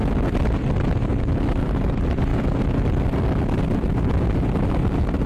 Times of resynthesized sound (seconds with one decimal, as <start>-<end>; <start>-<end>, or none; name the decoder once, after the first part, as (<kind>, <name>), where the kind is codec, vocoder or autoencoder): 1.5-2.3 (vocoder, BigVGAN v2); 4.4-5.3